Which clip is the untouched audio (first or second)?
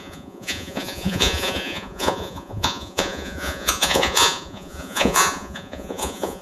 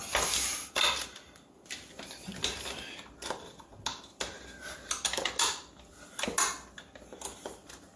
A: second